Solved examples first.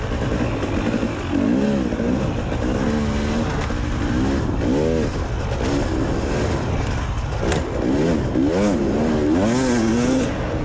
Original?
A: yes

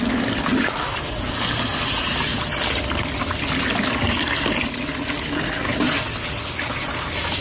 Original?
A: yes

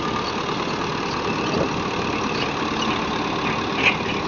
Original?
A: yes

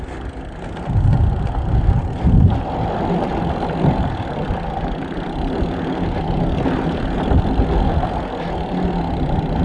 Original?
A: yes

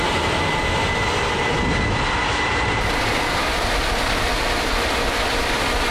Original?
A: yes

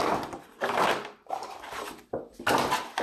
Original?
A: yes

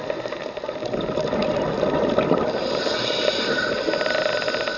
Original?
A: yes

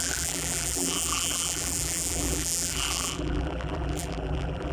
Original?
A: no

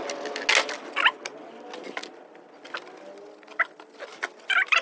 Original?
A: yes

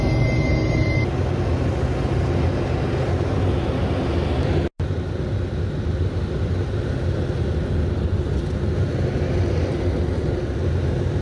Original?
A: yes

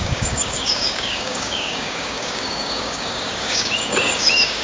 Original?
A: no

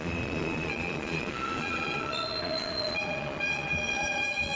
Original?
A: no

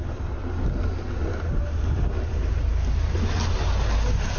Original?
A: yes